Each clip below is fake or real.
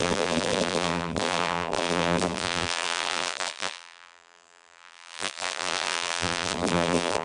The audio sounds fake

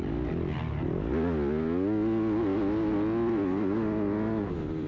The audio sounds real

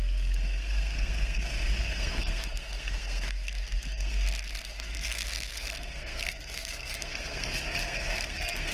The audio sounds fake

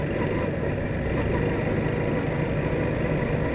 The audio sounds real